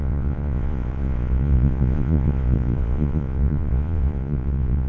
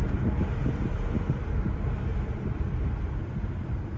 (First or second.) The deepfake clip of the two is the first